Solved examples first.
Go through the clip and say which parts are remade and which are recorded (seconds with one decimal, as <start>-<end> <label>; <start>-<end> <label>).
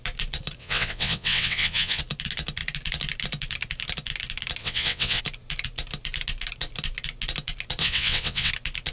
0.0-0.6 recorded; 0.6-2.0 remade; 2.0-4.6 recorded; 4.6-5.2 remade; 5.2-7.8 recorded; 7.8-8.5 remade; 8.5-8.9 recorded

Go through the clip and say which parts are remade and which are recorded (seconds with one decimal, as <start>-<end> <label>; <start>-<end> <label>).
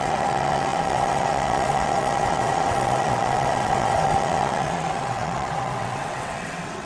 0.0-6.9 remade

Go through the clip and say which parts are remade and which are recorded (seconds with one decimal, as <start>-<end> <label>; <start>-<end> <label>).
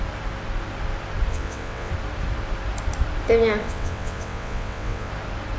0.0-1.3 recorded; 1.3-1.9 remade; 1.9-3.6 recorded; 3.6-5.1 remade; 5.1-5.6 recorded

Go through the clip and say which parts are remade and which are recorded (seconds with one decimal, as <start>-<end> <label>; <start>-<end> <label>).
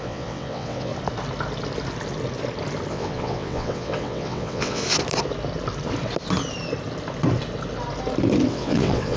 0.0-0.9 remade; 0.9-2.9 recorded; 2.9-4.8 remade; 4.8-8.5 recorded; 8.5-9.2 remade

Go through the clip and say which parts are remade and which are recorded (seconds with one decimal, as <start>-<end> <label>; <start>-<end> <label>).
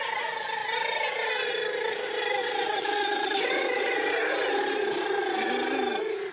0.0-2.4 recorded; 2.4-4.1 remade; 4.1-6.3 recorded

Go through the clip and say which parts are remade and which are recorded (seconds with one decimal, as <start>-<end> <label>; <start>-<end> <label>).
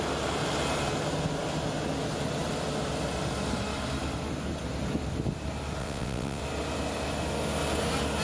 0.0-5.8 recorded; 5.8-6.4 remade; 6.4-8.2 recorded